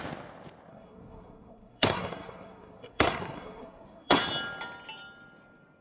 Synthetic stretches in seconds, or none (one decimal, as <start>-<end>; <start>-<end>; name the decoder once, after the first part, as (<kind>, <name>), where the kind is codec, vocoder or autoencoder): 0.7-4.2 (codec, SNAC)